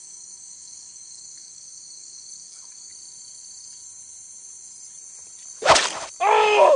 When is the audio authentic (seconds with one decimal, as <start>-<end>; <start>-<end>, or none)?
2.9-6.3